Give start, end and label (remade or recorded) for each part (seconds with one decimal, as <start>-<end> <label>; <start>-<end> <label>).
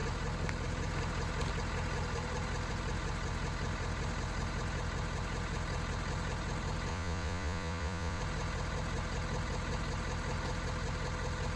0.0-6.9 recorded; 6.9-8.2 remade; 8.2-11.6 recorded